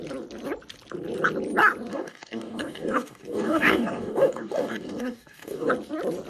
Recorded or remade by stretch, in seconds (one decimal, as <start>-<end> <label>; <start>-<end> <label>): 0.0-1.9 recorded; 1.9-5.7 remade; 5.7-6.3 recorded